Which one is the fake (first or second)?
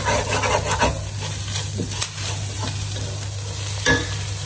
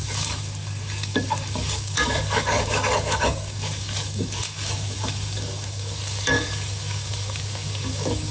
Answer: second